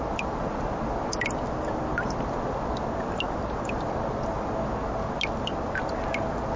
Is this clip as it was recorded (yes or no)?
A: yes